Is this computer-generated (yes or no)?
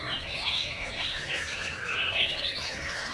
yes